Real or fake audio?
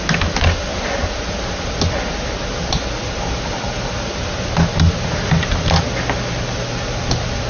real